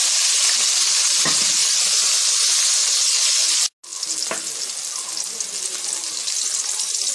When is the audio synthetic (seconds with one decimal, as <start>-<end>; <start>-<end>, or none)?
none